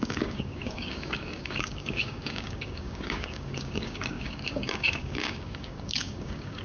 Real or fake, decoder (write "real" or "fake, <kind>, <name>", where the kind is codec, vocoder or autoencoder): fake, codec, DAC